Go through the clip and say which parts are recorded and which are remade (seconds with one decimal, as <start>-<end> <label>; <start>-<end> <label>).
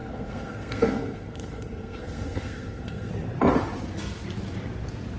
0.0-3.1 remade; 3.1-5.2 recorded